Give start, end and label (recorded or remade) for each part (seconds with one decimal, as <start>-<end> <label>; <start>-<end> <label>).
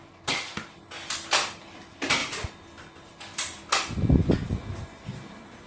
0.0-5.7 recorded